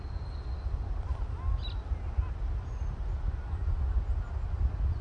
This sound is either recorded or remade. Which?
recorded